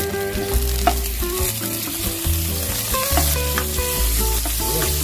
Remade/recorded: recorded